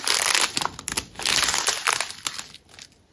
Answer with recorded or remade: recorded